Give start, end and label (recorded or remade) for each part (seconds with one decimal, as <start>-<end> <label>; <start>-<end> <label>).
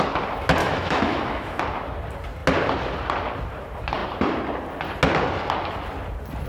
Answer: 0.0-0.6 recorded; 0.6-1.6 remade; 1.6-6.5 recorded